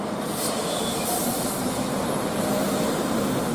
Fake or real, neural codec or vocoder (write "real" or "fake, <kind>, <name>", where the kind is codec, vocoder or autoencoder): fake, vocoder, BigVGAN v2